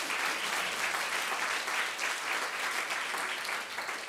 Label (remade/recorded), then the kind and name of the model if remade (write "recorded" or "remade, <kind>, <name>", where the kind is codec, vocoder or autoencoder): recorded